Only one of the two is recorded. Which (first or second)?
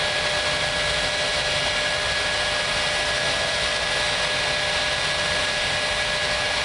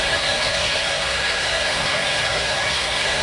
first